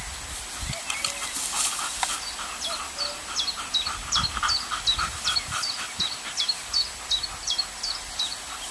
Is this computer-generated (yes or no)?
no